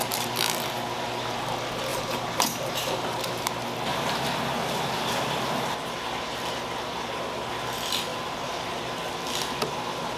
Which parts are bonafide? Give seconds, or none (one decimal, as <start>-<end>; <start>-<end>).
0.0-1.9; 3.5-8.1; 8.8-10.2